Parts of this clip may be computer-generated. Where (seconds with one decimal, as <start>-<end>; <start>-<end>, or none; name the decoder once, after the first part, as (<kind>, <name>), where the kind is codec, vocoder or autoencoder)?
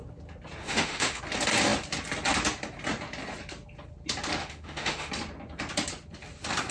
0.6-1.2 (autoencoder, DAC-VAE); 4.4-5.1